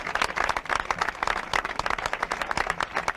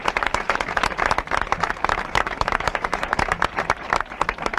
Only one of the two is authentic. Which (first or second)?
first